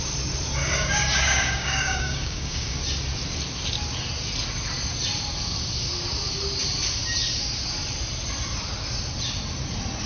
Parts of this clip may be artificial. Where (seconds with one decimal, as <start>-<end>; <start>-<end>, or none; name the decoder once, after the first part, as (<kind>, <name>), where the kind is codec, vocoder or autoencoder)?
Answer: 0.6-2.8 (codec, DAC)